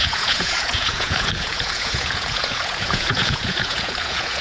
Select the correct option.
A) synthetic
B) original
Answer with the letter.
A